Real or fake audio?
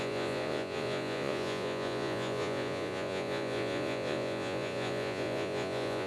fake